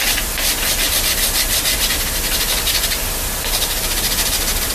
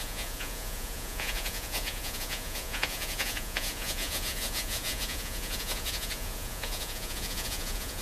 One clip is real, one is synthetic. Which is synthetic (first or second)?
second